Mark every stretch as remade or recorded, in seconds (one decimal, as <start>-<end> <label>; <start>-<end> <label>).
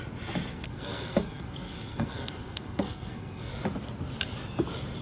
0.0-0.5 recorded; 0.5-3.5 remade; 3.5-5.0 recorded